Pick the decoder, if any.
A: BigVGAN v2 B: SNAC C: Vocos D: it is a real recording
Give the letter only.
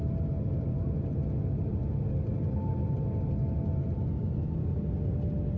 D